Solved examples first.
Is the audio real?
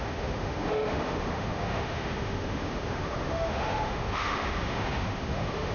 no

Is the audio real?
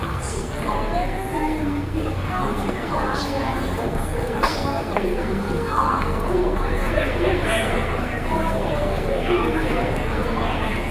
no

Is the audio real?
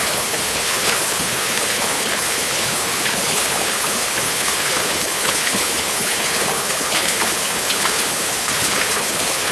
no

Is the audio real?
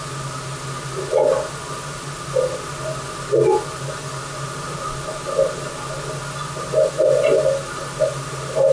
yes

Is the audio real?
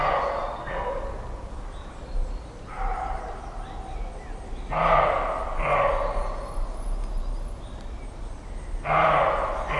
yes